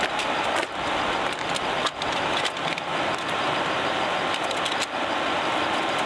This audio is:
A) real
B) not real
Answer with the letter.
A